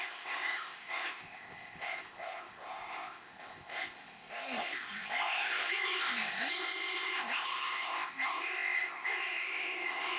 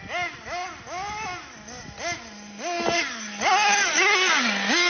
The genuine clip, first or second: second